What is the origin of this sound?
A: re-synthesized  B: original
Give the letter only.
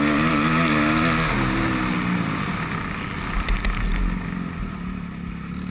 B